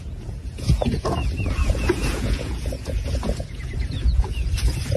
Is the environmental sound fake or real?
fake